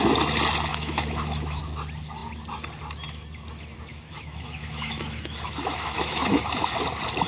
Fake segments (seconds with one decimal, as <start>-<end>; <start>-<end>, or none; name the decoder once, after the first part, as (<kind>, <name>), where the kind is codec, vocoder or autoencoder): 0.7-1.6 (autoencoder, DAC-VAE); 3.9-6.4